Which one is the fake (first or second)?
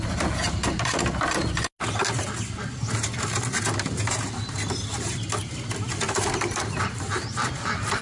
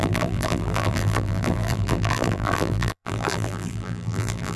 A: second